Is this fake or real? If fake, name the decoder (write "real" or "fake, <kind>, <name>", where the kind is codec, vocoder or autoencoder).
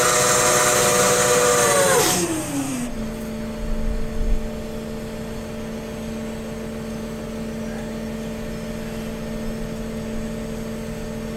real